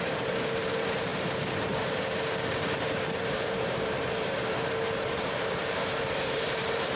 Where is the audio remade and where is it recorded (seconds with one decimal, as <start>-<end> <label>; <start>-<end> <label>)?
0.0-1.1 remade; 1.1-3.2 recorded; 3.2-7.0 remade